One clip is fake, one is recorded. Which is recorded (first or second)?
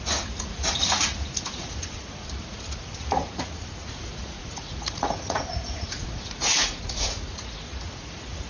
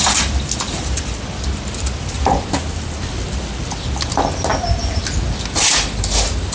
second